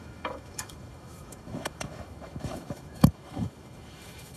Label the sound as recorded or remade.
remade